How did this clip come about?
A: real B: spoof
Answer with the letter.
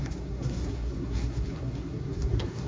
B